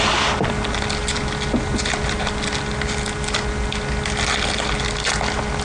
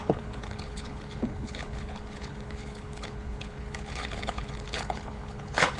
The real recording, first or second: first